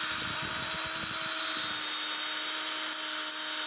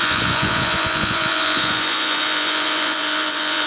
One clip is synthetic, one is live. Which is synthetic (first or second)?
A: second